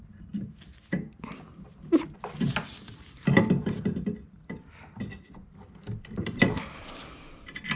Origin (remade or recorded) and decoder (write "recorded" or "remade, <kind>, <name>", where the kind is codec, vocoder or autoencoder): recorded